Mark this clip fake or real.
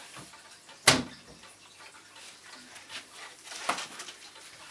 real